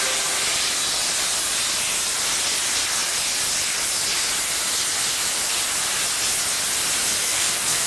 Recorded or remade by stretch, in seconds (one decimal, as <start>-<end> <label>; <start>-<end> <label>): 0.0-7.2 recorded; 7.2-7.9 remade